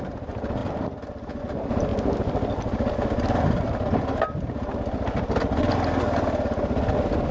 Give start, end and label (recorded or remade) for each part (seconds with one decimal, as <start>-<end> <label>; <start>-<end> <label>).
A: 0.0-7.3 recorded